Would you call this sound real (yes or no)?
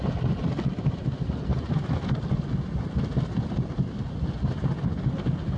yes